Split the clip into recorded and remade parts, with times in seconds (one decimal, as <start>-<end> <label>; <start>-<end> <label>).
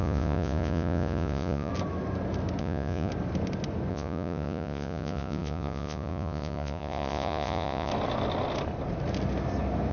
0.0-1.7 remade; 1.7-2.6 recorded; 2.6-3.1 remade; 3.1-3.9 recorded; 3.9-7.9 remade; 7.9-9.9 recorded